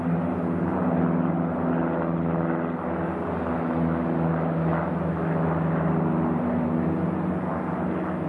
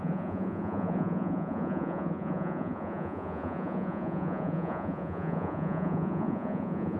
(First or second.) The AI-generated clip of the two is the second